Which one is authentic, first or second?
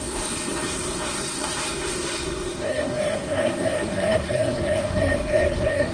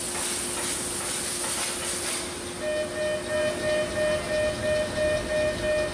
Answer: second